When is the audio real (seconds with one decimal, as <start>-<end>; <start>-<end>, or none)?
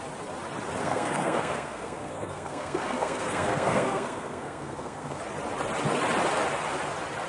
0.0-0.8; 5.2-7.3